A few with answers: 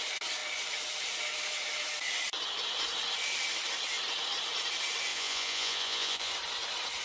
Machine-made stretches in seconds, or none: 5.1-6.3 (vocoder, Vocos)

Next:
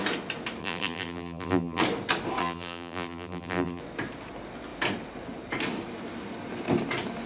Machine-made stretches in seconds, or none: 0.6-1.8 (vocoder, BigVGAN v2); 2.4-3.8

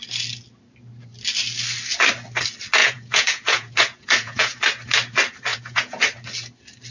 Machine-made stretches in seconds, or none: 2.8-4.6 (vocoder, Vocos); 5.5-6.0

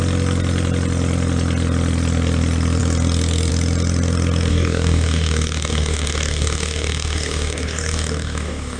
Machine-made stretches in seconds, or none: 4.5-8.8 (codec, DAC)